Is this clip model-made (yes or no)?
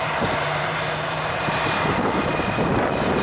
yes